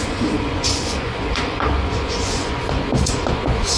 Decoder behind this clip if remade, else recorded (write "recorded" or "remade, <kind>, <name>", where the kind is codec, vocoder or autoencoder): remade, vocoder, Vocos